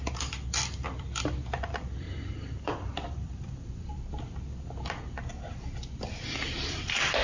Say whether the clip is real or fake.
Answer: fake